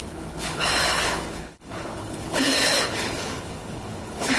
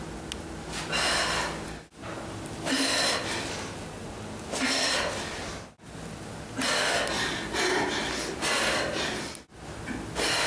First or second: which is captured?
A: second